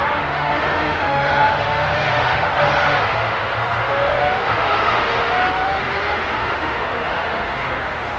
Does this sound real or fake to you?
fake